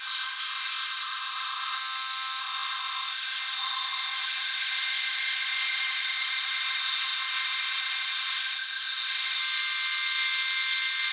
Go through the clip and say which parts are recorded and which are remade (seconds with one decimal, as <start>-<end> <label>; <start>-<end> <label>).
0.0-1.8 remade; 1.8-2.4 recorded; 2.4-9.4 remade; 9.4-11.1 recorded